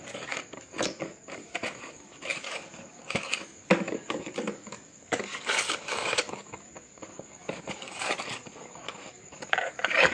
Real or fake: fake